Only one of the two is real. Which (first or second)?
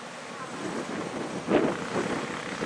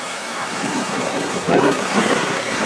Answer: first